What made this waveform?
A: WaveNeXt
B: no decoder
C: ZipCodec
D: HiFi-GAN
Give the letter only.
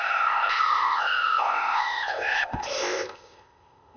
C